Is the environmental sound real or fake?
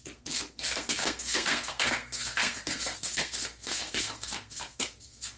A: fake